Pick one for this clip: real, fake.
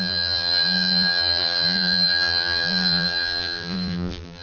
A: fake